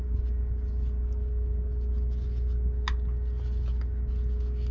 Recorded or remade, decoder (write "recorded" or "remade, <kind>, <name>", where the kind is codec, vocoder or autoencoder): recorded